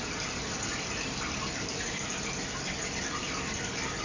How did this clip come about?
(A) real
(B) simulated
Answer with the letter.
A